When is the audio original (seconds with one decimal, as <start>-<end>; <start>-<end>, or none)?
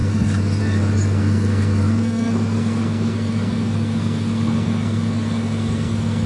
none